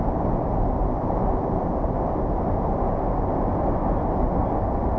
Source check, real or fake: real